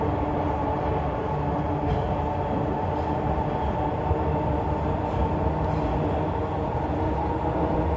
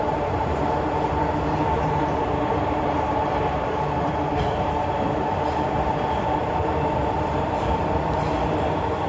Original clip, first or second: first